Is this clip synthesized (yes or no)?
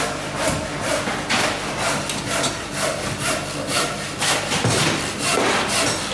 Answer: no